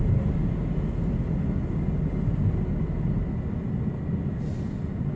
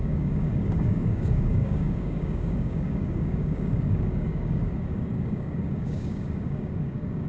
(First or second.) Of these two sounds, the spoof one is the second